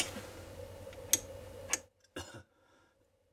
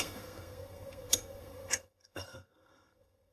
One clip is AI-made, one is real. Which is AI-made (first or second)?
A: second